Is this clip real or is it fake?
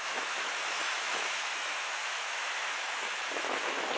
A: fake